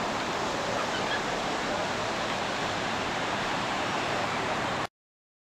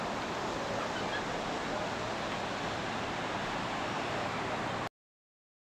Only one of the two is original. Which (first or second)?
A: second